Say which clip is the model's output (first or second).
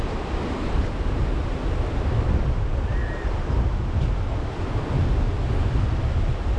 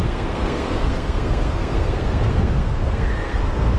second